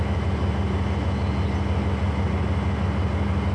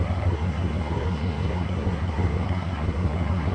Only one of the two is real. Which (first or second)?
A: first